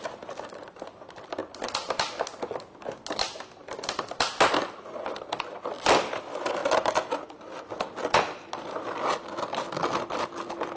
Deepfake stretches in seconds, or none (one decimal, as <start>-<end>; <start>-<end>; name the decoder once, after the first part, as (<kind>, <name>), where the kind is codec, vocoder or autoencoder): 0.0-1.4 (vocoder, BigVGAN v2); 6.1-6.6

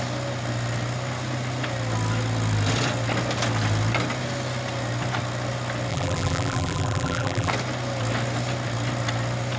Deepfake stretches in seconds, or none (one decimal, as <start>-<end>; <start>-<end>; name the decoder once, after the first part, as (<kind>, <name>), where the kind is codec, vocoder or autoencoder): 5.9-7.5 (vocoder, BigVGAN v2)

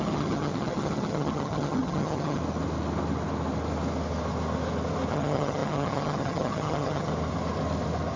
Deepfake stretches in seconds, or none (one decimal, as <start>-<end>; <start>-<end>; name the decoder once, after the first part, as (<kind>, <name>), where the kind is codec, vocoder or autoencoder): 0.0-2.4 (vocoder, HiFi-GAN); 5.1-7.1

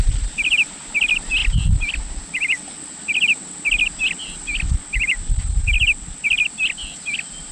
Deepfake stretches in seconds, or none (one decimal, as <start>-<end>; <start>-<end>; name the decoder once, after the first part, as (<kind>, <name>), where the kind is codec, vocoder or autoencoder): none